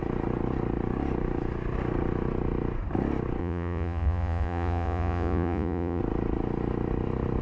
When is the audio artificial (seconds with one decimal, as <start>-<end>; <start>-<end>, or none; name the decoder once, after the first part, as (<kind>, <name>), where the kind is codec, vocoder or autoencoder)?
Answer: 3.4-6.0 (vocoder, Vocos)